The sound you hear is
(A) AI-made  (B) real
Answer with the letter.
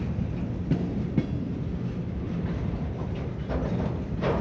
B